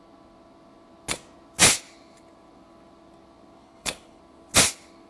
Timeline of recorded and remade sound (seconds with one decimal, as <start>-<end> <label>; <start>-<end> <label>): 0.0-3.6 recorded; 3.6-4.2 remade; 4.2-5.1 recorded